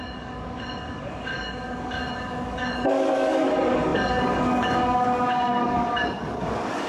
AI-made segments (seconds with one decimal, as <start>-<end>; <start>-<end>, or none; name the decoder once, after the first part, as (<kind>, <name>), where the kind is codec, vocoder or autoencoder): 0.0-6.9 (codec, DAC)